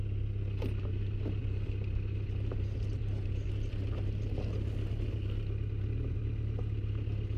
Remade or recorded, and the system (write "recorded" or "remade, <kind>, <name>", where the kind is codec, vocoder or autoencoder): recorded